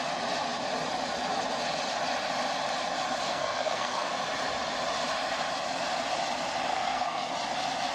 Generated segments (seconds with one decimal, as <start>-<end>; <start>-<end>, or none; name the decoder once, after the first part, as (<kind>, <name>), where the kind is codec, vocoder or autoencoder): 3.3-4.1 (codec, SNAC); 6.7-7.3